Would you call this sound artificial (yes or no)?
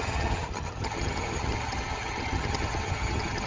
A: yes